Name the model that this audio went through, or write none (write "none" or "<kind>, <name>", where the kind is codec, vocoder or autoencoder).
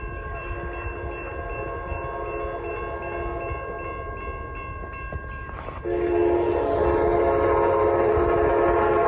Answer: none